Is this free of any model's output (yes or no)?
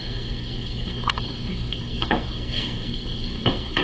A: no